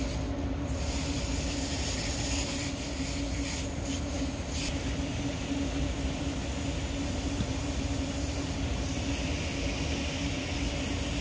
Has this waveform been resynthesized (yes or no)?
no